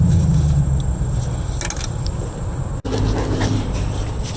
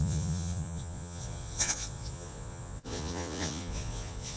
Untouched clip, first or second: first